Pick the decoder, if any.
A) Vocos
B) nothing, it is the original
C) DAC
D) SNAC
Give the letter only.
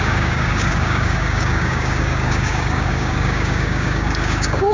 C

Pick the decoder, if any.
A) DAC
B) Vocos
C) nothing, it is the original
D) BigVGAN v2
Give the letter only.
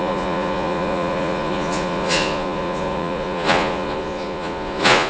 B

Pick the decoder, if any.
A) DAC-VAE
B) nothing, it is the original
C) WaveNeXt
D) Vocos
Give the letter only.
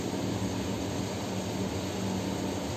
B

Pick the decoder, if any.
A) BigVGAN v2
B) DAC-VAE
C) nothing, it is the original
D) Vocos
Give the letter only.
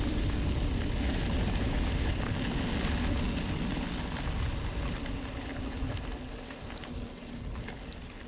C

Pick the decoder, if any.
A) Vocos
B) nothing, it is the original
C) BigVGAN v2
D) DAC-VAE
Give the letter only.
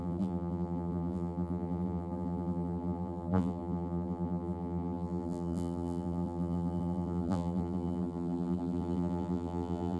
C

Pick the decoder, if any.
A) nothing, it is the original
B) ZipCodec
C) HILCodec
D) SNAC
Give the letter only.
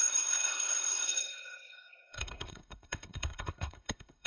D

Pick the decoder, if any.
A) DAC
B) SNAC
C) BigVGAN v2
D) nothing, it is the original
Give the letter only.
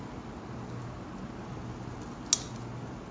D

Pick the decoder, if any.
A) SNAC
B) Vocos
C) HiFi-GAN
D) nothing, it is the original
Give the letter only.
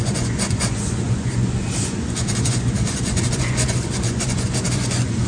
B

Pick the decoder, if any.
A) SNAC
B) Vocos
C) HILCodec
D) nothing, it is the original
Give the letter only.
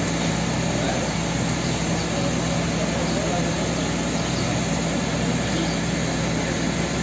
D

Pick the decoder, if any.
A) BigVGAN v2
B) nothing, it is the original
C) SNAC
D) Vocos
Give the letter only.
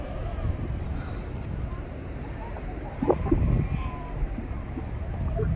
A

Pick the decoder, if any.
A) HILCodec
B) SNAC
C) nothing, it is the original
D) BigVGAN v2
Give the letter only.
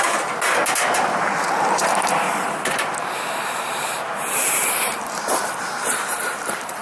D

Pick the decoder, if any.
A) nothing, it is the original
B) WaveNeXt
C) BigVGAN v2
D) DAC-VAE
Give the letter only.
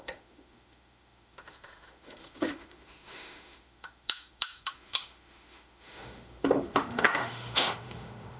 D